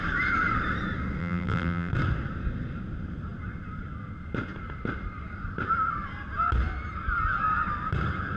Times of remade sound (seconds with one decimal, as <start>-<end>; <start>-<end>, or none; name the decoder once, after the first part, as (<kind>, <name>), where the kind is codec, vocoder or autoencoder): 1.2-1.9 (vocoder, BigVGAN v2)